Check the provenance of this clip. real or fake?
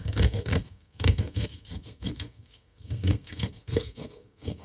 fake